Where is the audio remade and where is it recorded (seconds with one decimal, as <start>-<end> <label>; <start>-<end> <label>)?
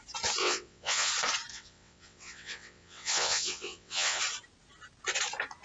0.0-0.4 recorded; 0.4-1.1 remade; 1.1-1.5 recorded; 1.5-4.2 remade; 4.2-5.6 recorded